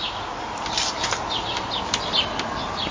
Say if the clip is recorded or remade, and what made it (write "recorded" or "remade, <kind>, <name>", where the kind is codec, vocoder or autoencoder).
recorded